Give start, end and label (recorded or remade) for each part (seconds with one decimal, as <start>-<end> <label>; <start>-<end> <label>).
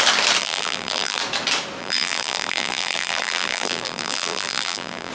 0.0-0.4 recorded; 0.4-1.2 remade; 1.2-1.8 recorded; 1.8-5.1 remade